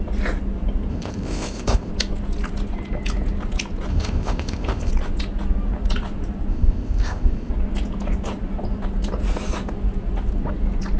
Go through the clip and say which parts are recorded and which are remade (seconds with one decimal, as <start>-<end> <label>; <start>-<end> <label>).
0.0-0.9 recorded; 0.9-1.9 remade; 1.9-3.9 recorded; 3.9-4.9 remade; 4.9-6.5 recorded; 6.5-7.5 remade; 7.5-11.0 recorded